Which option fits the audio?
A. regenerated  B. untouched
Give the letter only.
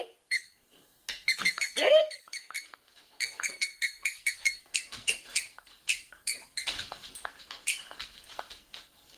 A